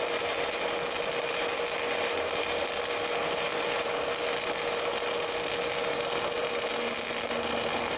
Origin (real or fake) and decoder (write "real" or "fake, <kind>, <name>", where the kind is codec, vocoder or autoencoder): real